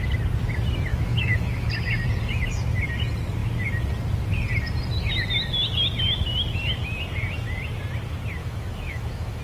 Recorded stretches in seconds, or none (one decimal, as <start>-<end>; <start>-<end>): 0.0-0.9; 1.7-8.4